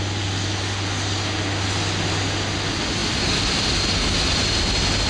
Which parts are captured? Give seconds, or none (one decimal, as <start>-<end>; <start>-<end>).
0.0-5.1